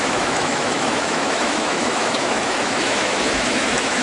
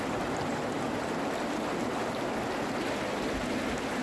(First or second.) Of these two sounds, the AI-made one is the first